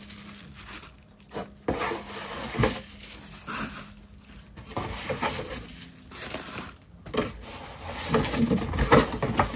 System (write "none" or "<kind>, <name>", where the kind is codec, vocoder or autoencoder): none